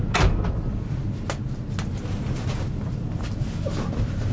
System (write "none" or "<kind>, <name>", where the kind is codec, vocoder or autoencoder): none